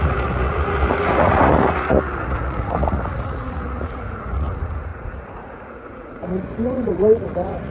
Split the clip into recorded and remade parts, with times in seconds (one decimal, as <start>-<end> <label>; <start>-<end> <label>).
0.0-7.7 remade